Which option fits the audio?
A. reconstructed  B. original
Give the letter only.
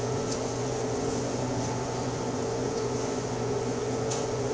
A